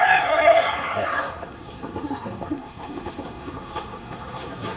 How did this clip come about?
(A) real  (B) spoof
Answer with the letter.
B